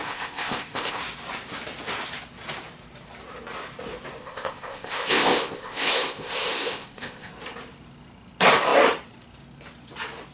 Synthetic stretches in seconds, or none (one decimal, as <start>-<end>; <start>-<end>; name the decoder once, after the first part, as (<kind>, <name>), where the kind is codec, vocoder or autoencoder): 0.0-1.0 (codec, ZipCodec); 4.2-7.3